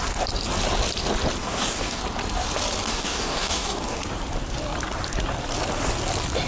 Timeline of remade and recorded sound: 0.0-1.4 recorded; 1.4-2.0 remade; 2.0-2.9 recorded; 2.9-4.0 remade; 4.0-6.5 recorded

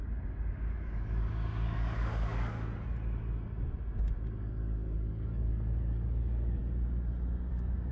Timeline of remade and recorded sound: 0.0-0.5 recorded; 0.5-2.7 remade; 2.7-4.4 recorded; 4.4-6.6 remade; 6.6-7.5 recorded; 7.5-7.9 remade